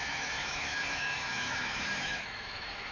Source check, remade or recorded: remade